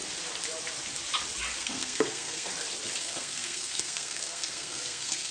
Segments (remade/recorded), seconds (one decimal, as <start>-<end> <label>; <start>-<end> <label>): 0.0-1.6 recorded; 1.6-2.5 remade; 2.5-3.0 recorded; 3.0-5.3 remade